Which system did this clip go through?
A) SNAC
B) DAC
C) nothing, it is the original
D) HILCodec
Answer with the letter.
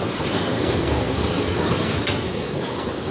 A